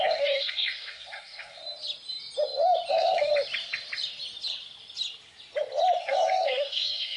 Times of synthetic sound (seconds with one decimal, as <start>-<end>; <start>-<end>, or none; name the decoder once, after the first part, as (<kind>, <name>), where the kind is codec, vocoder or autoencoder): 0.0-1.6 (codec, SNAC); 2.9-3.3; 6.0-7.2